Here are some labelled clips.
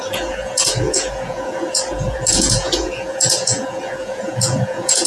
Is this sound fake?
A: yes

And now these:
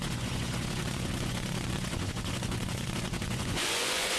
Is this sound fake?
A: yes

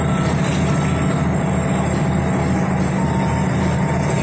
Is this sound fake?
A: no